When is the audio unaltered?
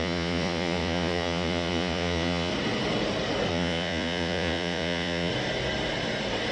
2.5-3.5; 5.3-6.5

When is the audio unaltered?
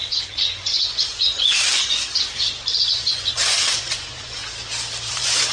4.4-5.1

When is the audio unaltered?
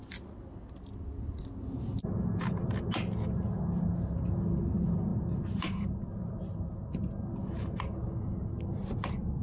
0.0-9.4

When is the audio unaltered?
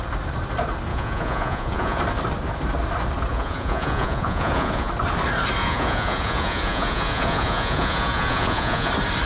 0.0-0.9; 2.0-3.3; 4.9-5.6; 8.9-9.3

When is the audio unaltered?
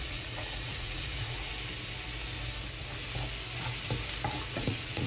1.5-4.3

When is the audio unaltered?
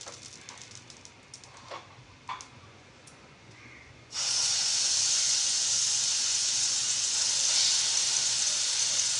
0.0-2.5; 7.2-8.2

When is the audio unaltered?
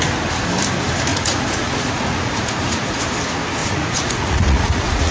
0.0-1.1; 3.0-3.6